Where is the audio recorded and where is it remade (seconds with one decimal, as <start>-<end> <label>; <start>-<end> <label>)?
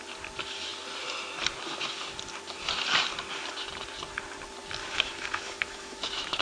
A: 0.0-4.8 recorded; 4.8-6.4 remade